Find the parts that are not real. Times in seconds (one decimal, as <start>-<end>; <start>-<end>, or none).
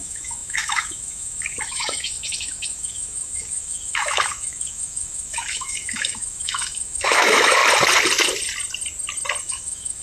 0.0-7.6; 9.4-10.0